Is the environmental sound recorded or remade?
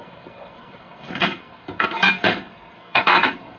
remade